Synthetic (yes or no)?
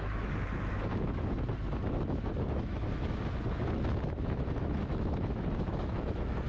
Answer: yes